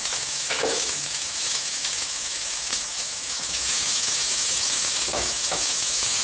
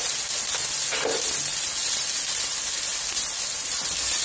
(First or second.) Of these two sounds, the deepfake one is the first